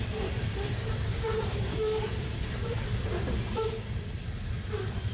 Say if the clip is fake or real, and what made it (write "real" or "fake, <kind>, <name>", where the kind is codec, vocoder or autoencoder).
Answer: fake, vocoder, BigVGAN v2